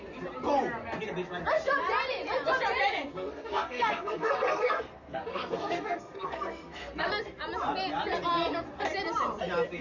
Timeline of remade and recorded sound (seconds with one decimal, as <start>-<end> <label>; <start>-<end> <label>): 0.0-3.1 recorded; 3.1-7.1 remade; 7.1-9.8 recorded